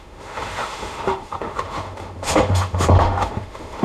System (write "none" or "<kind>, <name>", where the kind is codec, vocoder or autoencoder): autoencoder, DAC-VAE